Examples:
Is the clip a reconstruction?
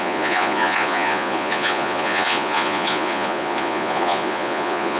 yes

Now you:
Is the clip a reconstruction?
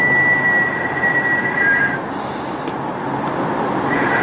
no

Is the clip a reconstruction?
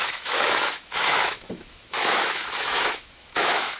yes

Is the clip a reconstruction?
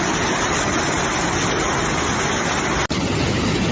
no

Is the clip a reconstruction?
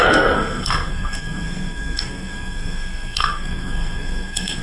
yes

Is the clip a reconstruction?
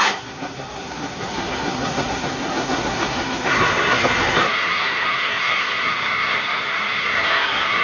yes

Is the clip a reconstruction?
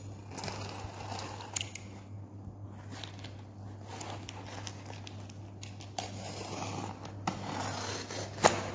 no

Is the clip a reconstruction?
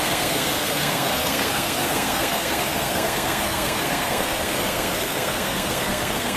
yes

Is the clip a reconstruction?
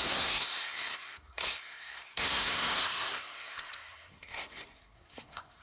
yes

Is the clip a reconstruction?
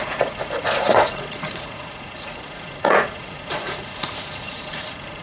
yes